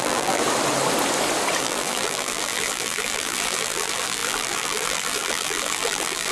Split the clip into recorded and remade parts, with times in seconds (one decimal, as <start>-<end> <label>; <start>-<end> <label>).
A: 0.0-0.4 remade; 0.4-1.6 recorded; 1.6-6.3 remade